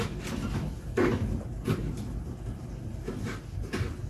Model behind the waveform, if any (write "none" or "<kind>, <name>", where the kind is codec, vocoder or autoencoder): none